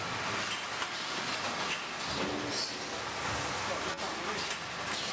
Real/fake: real